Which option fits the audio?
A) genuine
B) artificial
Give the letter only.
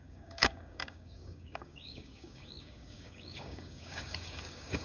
B